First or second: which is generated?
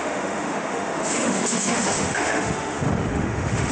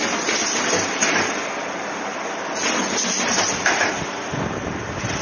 first